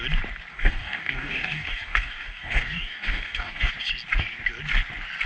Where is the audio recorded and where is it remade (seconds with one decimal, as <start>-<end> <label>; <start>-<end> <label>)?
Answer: 0.0-0.5 recorded; 0.5-3.7 remade; 3.7-5.3 recorded